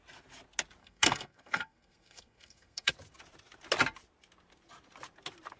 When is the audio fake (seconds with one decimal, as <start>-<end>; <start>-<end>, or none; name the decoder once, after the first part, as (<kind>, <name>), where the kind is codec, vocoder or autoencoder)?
0.8-2.9 (codec, SNAC)